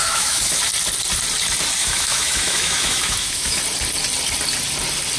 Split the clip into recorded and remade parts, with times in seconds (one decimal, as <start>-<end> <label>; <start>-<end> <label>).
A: 0.0-0.6 remade; 0.6-1.8 recorded; 1.8-3.6 remade; 3.6-5.2 recorded

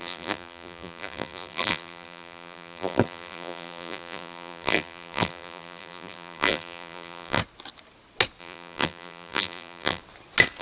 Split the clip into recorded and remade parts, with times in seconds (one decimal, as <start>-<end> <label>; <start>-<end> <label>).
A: 0.0-7.4 remade; 7.4-8.4 recorded; 8.4-10.0 remade; 10.0-10.6 recorded

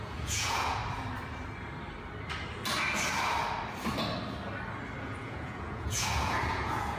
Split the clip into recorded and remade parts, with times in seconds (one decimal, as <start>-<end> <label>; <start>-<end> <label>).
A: 0.0-0.8 remade; 0.8-5.0 recorded; 5.0-7.0 remade

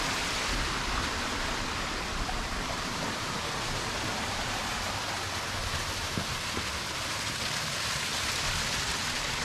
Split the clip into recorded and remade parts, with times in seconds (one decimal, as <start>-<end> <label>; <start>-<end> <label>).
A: 0.0-1.3 recorded; 1.3-4.6 remade; 4.6-9.4 recorded

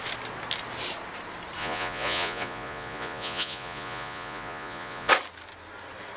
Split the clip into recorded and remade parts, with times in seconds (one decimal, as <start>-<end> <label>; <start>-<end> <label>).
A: 0.0-1.6 recorded; 1.6-5.1 remade; 5.1-6.2 recorded

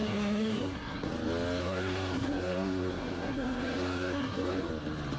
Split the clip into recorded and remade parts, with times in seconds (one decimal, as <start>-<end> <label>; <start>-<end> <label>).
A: 0.0-1.1 remade; 1.1-1.6 recorded; 1.6-4.7 remade; 4.7-5.2 recorded

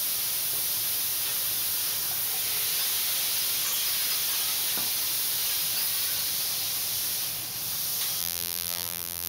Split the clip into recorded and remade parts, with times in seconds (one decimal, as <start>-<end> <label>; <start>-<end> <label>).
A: 0.0-8.2 recorded; 8.2-9.3 remade